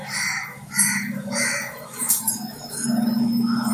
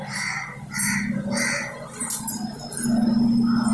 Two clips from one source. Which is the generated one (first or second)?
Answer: first